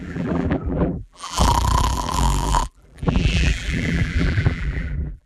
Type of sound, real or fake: fake